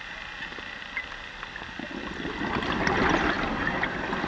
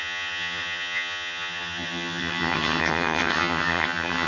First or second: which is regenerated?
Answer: second